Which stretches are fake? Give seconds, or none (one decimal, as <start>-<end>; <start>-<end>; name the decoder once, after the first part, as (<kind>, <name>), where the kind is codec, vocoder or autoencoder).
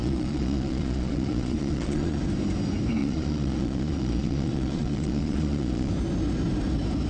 0.0-2.2 (vocoder, Vocos); 3.0-5.9